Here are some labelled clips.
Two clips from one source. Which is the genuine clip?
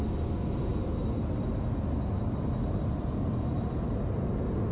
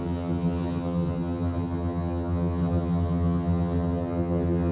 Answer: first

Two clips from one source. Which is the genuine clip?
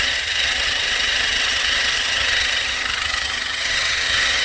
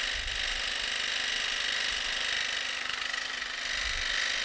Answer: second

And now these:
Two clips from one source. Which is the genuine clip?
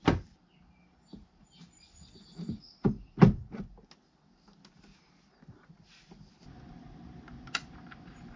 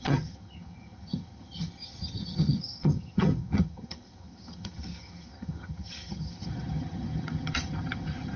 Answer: first